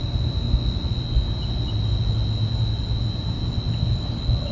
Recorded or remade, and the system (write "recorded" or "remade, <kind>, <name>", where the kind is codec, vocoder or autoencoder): recorded